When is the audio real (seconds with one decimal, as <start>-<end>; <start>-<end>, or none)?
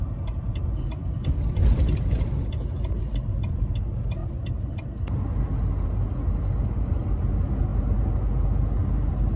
0.0-4.2; 4.9-9.4